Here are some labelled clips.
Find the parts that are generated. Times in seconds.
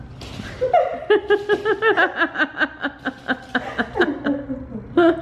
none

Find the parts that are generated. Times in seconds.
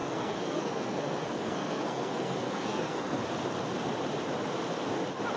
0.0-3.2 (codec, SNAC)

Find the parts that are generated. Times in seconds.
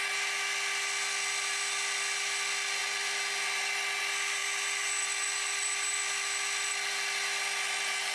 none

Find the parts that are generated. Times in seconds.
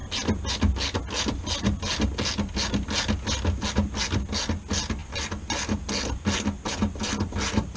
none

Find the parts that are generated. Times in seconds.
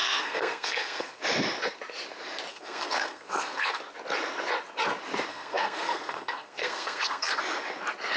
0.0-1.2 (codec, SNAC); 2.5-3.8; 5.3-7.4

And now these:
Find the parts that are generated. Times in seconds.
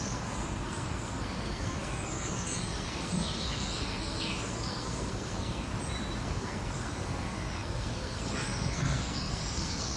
0.0-5.7 (codec, SNAC); 6.2-10.0